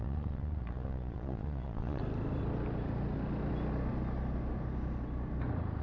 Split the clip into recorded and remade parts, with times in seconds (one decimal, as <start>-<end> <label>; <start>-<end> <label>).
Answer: 0.0-2.0 remade; 2.0-5.8 recorded